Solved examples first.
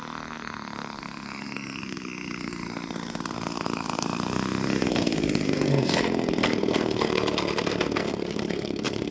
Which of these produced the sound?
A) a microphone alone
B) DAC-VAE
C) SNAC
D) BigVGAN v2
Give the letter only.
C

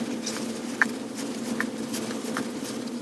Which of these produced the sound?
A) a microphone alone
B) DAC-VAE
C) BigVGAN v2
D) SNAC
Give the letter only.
A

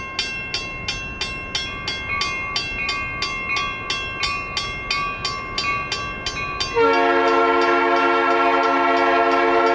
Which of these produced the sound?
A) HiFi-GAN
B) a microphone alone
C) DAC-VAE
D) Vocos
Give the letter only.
B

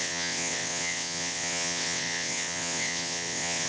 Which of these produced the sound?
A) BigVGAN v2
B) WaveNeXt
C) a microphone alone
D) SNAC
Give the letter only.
B